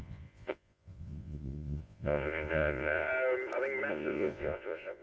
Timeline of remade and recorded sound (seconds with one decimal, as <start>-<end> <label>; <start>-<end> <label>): 0.0-3.1 remade; 3.1-3.9 recorded; 3.9-5.0 remade